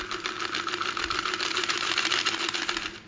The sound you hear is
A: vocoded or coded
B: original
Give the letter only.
B